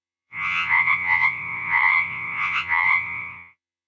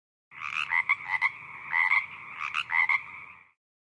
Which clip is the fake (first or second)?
first